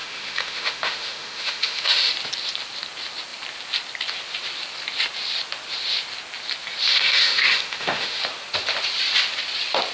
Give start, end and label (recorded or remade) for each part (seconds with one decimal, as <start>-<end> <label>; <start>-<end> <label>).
0.0-2.1 remade; 2.1-6.9 recorded; 6.9-8.2 remade; 8.2-9.9 recorded